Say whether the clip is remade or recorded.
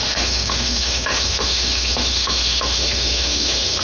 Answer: remade